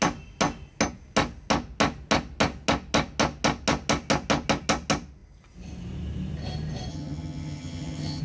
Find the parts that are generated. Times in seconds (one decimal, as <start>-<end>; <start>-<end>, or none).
6.9-8.2